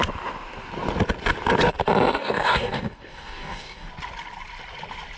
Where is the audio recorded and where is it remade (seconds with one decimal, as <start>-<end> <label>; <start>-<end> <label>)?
0.0-2.2 recorded; 2.2-3.9 remade; 3.9-5.2 recorded